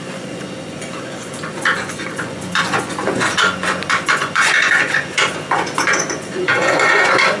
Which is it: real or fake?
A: fake